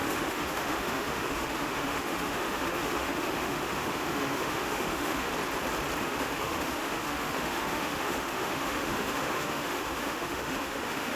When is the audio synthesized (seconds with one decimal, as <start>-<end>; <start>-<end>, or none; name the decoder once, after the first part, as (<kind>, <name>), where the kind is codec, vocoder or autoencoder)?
0.0-5.3 (autoencoder, DAC-VAE); 6.0-11.2